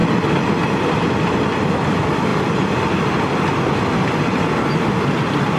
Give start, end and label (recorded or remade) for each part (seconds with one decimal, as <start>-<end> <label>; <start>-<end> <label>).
0.0-5.6 recorded